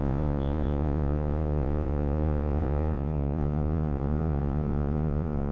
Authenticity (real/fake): fake